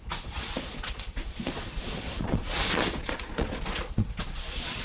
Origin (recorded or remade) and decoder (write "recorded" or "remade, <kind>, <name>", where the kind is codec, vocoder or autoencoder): remade, vocoder, Vocos